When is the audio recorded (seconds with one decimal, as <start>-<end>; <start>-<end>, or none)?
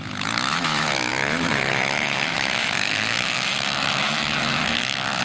none